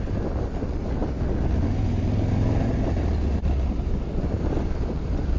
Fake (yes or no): no